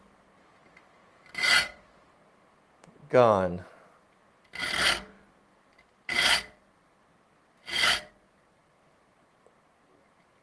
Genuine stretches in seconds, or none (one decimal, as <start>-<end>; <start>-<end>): 0.0-10.4